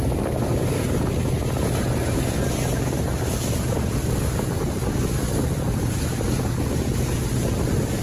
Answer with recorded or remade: recorded